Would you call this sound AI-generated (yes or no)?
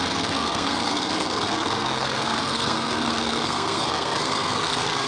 yes